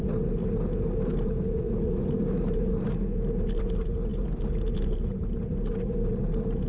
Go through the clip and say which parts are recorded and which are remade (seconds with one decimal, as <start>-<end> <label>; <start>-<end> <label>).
0.0-6.7 recorded